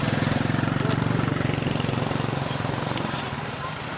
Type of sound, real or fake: real